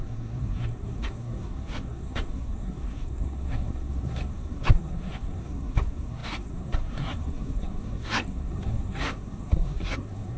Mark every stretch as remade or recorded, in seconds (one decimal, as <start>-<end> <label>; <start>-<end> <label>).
0.0-10.4 remade